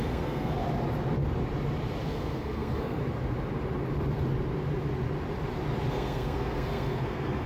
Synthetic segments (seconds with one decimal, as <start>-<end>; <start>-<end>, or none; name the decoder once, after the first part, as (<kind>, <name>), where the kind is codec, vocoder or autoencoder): 0.0-0.6 (codec, SNAC); 2.0-3.0; 5.9-7.5